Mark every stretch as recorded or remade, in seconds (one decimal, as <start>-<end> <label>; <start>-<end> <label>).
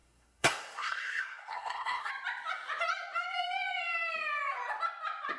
0.0-2.1 remade; 2.1-5.4 recorded